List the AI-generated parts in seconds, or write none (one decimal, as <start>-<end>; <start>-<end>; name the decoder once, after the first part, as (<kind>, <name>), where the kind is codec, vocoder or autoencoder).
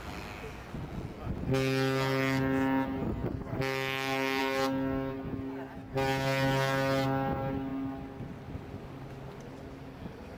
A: none